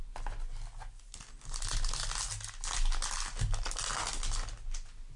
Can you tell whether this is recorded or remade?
recorded